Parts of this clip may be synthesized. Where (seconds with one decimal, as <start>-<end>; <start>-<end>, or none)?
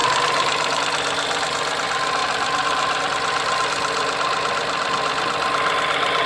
0.0-0.8; 2.2-3.0